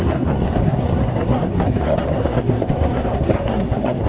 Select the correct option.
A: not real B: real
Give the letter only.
A